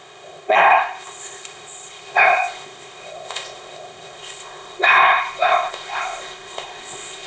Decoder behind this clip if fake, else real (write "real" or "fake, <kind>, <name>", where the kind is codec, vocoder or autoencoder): fake, codec, ZipCodec